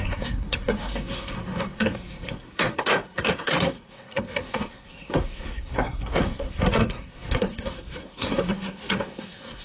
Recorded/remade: remade